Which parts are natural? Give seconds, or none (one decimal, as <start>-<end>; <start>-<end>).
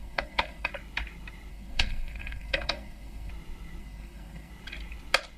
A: 0.7-1.5; 3.3-3.8; 4.5-5.4